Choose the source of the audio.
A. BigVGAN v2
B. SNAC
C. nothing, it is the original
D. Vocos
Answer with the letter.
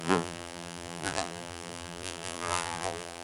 A